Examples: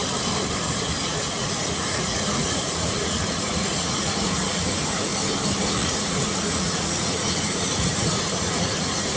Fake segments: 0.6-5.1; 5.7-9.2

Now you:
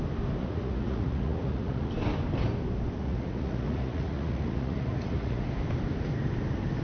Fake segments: 0.4-1.9; 3.0-5.4

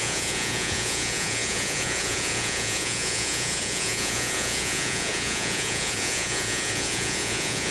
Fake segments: 0.0-7.7

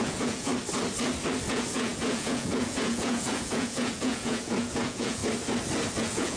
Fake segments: 0.0-0.5; 1.5-5.2; 6.0-6.4

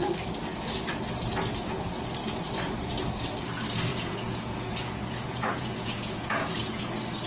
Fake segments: 3.9-6.8

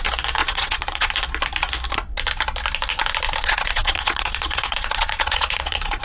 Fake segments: 0.4-1.1; 3.4-6.0

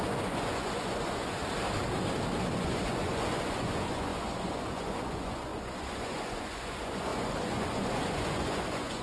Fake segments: 0.0-1.4; 2.5-9.0